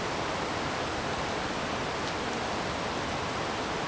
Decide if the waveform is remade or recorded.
recorded